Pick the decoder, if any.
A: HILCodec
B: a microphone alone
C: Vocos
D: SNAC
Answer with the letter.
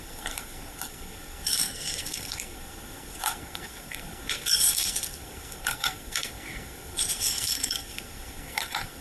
D